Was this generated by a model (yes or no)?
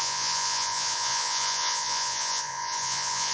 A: yes